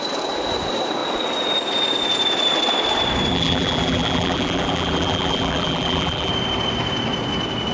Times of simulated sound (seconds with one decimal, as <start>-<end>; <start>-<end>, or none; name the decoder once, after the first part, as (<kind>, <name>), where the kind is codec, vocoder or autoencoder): 3.3-6.3 (vocoder, BigVGAN v2)